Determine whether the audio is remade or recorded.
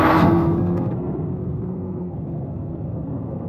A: remade